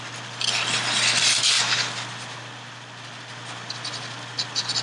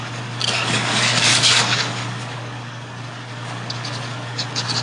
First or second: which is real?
first